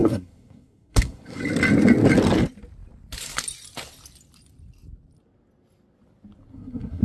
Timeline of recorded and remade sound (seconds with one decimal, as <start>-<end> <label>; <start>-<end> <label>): 0.0-1.4 remade; 1.4-6.5 recorded; 6.5-7.0 remade